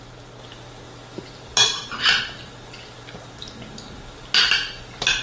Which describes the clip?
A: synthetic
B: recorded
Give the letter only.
B